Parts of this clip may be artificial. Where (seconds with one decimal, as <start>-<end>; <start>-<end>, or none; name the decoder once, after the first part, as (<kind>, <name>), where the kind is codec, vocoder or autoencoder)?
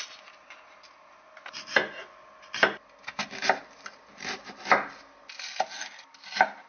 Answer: none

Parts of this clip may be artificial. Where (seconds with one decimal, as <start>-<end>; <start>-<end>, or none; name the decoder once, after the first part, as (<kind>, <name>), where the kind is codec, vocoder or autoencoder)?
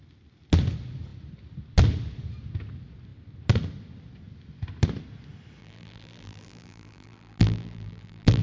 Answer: 5.6-8.4 (vocoder, BigVGAN v2)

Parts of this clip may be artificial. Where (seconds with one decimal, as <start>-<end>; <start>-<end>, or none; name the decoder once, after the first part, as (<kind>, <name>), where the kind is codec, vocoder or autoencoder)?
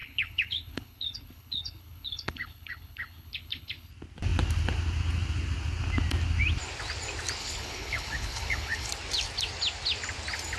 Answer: 0.0-3.9 (codec, HILCodec); 7.4-8.9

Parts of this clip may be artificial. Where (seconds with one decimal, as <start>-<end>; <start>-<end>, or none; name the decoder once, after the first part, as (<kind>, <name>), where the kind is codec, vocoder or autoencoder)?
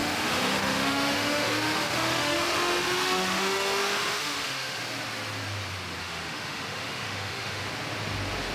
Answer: 0.0-4.8 (autoencoder, DAC-VAE); 6.0-7.7